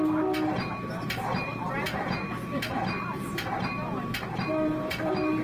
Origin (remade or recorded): remade